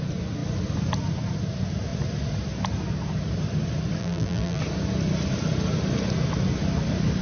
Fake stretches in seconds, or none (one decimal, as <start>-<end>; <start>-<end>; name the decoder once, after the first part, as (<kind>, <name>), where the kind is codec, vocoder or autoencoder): 4.0-4.6 (vocoder, BigVGAN v2)